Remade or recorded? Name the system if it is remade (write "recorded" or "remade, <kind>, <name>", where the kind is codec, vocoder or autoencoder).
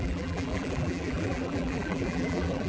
remade, vocoder, BigVGAN v2